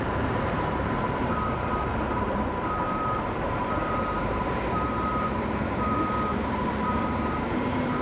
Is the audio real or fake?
fake